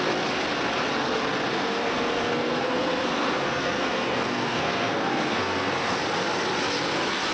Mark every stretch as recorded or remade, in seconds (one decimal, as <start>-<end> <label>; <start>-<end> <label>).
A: 0.0-1.5 recorded; 1.5-5.9 remade; 5.9-7.3 recorded